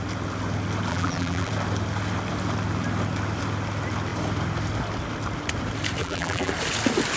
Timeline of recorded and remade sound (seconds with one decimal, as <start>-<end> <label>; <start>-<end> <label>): 0.0-0.9 recorded; 0.9-1.5 remade; 1.5-6.0 recorded; 6.0-6.5 remade; 6.5-7.2 recorded